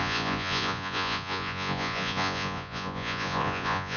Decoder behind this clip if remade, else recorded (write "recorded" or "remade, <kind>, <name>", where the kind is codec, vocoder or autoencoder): remade, vocoder, Vocos